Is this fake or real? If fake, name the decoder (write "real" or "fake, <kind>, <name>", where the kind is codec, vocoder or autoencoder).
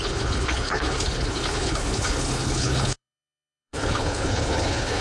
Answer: fake, codec, HILCodec